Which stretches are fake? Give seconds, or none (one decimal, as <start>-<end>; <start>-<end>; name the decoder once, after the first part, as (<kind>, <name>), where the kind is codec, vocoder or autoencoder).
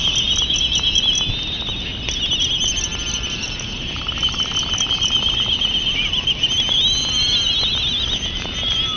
none